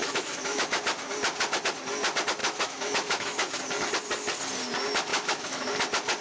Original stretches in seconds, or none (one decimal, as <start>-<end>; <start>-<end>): 0.8-2.4; 3.6-5.1; 5.7-6.2